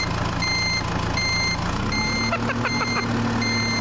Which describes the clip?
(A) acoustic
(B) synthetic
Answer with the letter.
A